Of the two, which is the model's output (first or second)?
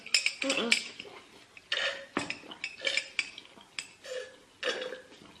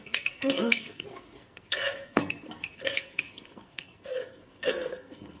second